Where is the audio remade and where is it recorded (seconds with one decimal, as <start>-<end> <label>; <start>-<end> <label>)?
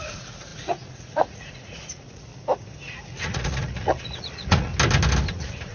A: 0.0-2.3 remade; 2.3-3.0 recorded; 3.0-4.7 remade; 4.7-5.3 recorded; 5.3-5.7 remade